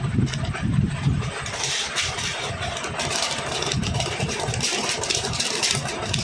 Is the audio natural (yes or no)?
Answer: no